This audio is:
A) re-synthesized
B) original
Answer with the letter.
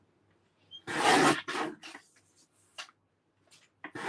B